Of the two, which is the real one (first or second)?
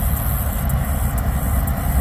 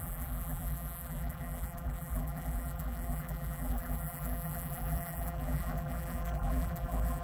first